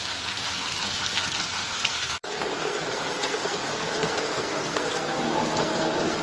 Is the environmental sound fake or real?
fake